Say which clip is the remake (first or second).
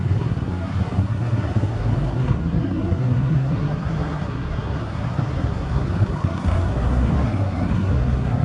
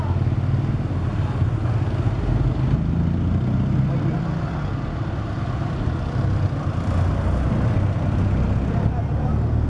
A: first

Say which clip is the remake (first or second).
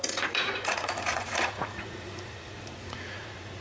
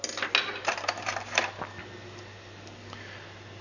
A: first